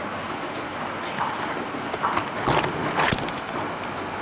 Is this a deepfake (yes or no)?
no